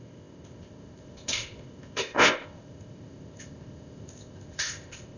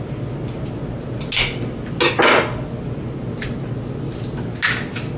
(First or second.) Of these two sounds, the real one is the second